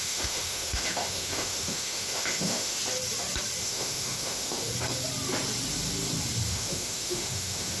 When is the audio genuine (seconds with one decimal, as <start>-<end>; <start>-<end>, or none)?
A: 2.8-3.6; 4.7-6.5